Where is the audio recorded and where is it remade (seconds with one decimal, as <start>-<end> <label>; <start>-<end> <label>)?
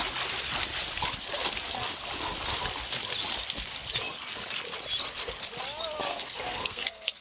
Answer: 0.0-6.1 recorded; 6.1-7.2 remade